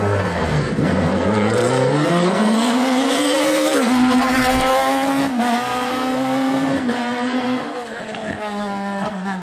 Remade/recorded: remade